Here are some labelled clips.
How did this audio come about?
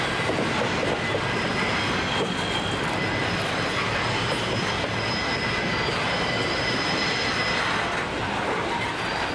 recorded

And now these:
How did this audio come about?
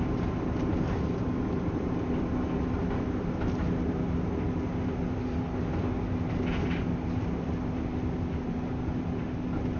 recorded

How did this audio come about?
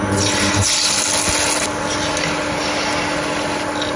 recorded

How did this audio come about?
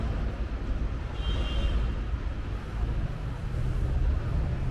recorded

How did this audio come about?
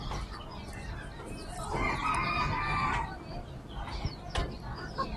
recorded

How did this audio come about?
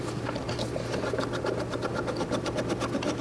recorded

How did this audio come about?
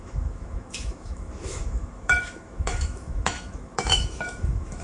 remade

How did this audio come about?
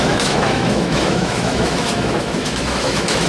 remade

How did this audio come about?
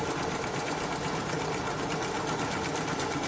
recorded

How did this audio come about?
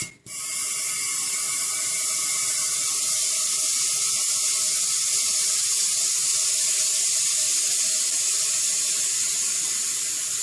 recorded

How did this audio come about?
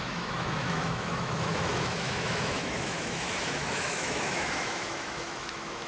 remade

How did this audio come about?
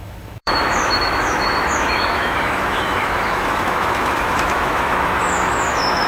remade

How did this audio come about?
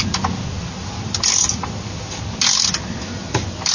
recorded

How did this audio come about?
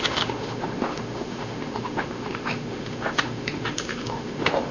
remade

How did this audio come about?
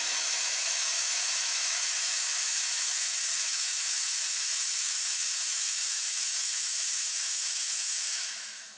remade